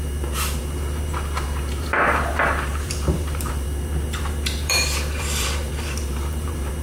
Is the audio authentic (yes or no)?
no